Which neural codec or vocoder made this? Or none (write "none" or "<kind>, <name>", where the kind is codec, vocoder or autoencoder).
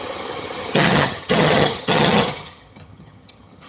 vocoder, HiFi-GAN